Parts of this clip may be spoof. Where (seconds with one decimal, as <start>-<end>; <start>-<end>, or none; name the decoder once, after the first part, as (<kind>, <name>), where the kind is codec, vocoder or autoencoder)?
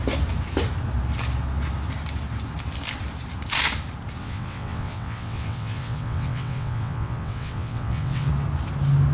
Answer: 4.2-8.3 (vocoder, WaveNeXt)